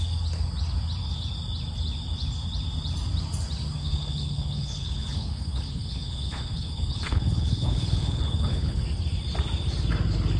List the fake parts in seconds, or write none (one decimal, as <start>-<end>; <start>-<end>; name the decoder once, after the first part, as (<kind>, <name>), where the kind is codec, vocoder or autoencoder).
3.8-8.8 (codec, HILCodec)